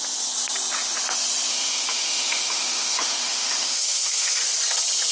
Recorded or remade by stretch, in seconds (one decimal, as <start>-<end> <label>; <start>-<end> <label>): 0.0-1.5 recorded; 1.5-4.4 remade; 4.4-5.1 recorded